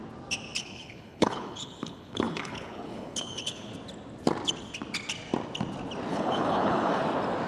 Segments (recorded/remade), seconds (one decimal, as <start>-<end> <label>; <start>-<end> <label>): 0.0-0.6 recorded; 0.6-3.7 remade; 3.7-6.1 recorded; 6.1-7.0 remade; 7.0-7.5 recorded